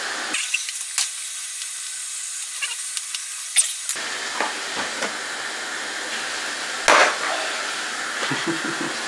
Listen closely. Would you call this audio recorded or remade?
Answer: recorded